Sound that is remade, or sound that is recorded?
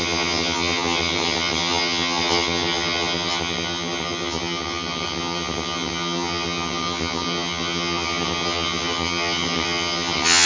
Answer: remade